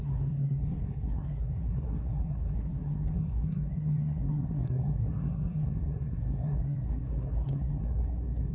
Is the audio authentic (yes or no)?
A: no